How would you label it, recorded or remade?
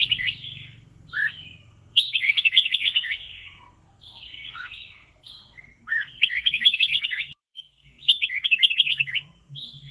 remade